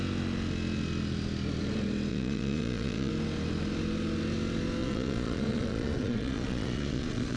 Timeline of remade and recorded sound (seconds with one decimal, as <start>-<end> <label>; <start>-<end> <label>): 0.0-2.1 recorded; 2.1-3.1 remade; 3.1-4.8 recorded; 4.8-7.4 remade